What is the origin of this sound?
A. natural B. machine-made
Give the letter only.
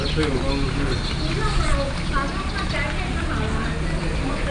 A